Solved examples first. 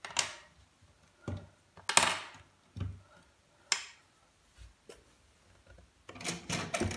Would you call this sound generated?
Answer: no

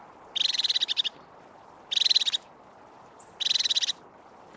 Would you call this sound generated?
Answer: no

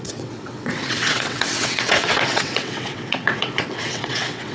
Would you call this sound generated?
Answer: yes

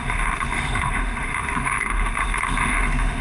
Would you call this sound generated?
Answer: yes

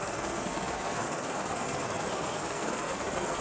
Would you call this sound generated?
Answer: yes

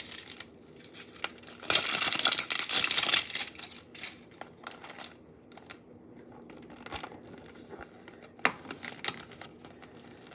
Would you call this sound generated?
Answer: no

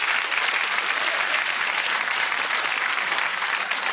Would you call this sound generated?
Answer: no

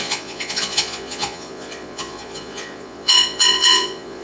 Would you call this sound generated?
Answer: yes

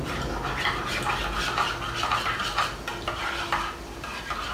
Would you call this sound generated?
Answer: no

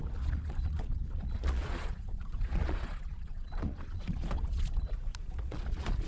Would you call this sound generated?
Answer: yes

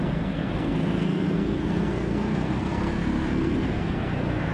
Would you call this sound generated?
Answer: yes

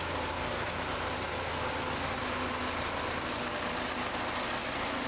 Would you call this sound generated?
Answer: no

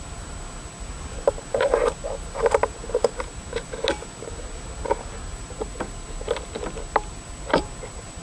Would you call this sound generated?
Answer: no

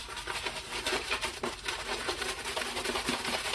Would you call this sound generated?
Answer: no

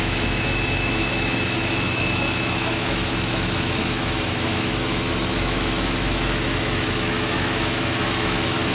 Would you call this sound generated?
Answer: yes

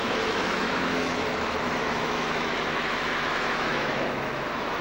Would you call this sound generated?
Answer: yes